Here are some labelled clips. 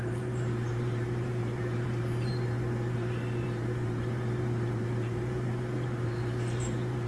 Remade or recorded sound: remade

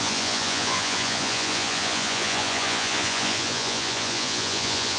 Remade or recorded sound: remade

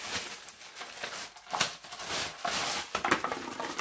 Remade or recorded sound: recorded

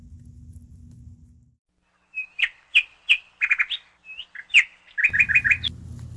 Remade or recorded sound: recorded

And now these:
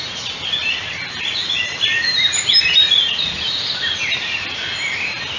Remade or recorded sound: recorded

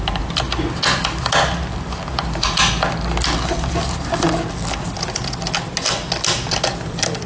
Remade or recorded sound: recorded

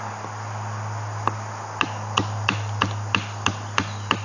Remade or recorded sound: recorded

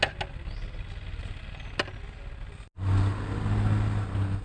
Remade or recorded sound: recorded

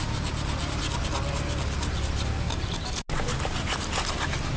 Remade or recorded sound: recorded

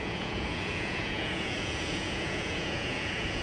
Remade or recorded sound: remade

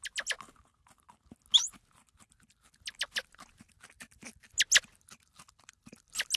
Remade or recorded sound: recorded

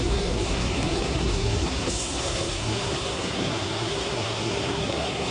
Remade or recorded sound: remade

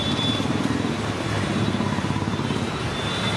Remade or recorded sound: recorded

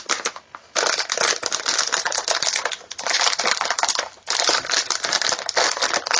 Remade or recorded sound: recorded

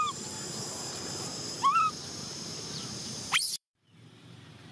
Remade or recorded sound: remade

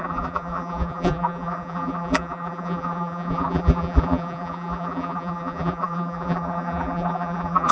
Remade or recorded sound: remade